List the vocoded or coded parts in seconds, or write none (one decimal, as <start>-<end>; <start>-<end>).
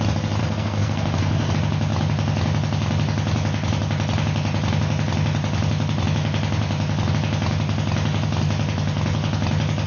0.4-1.5